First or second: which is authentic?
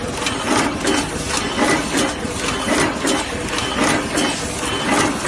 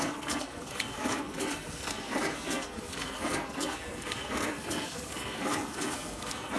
first